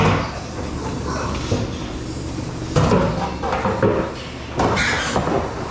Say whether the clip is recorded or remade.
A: recorded